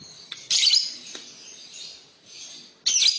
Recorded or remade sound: recorded